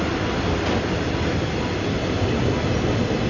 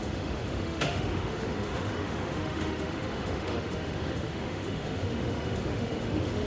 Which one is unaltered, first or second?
first